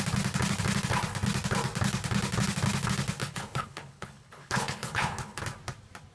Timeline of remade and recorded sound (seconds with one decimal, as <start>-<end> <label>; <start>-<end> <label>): 0.0-3.2 recorded; 3.2-5.4 remade; 5.4-6.1 recorded